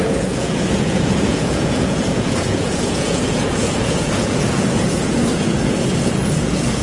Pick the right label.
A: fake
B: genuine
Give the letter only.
A